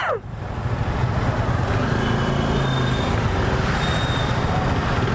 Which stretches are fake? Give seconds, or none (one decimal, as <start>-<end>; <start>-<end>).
none